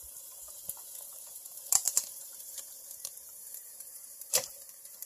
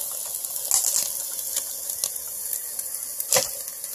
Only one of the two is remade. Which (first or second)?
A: first